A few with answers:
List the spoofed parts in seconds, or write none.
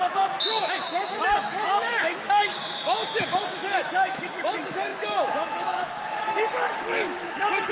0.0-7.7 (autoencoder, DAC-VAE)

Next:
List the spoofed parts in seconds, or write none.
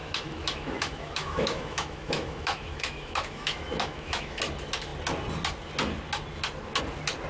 0.0-4.4 (autoencoder, DAC-VAE)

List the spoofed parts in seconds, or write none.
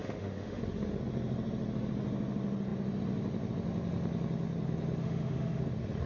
0.0-0.6 (autoencoder, DAC-VAE); 5.0-5.6